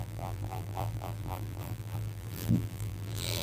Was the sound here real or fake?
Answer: fake